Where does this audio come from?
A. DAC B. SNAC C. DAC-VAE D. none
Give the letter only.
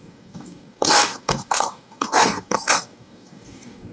A